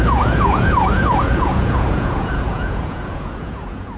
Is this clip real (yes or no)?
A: no